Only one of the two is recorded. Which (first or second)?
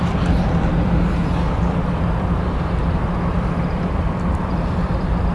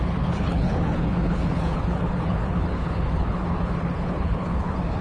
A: first